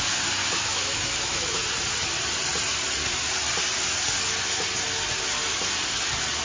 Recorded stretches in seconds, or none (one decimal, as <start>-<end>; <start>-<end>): 0.0-0.4; 1.6-6.4